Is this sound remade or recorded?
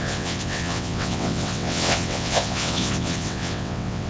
remade